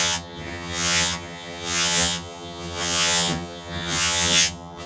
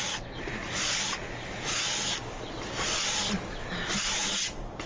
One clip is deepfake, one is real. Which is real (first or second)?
second